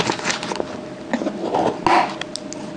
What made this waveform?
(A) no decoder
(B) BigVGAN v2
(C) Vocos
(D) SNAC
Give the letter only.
A